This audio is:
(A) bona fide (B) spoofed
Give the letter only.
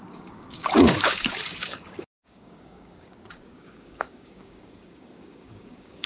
B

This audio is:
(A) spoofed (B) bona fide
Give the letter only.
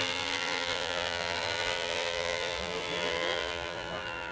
A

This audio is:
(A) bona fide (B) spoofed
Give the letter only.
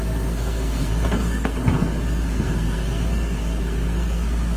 B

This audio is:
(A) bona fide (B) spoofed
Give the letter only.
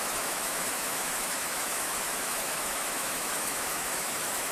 B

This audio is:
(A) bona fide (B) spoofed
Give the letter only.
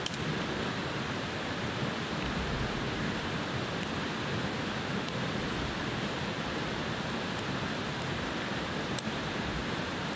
A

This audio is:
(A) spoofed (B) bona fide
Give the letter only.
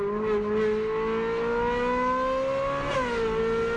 B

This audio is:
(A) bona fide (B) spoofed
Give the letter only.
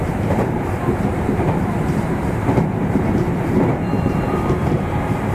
B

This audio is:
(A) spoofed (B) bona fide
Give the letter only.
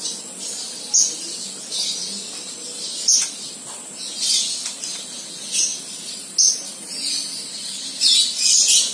B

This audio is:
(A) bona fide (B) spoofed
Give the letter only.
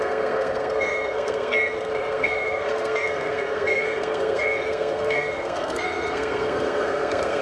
B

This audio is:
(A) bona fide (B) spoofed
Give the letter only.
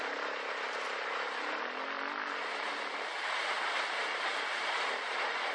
A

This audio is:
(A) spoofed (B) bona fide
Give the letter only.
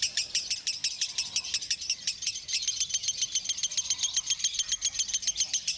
B